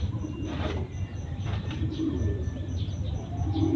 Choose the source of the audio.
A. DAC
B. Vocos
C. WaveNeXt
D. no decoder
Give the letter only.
D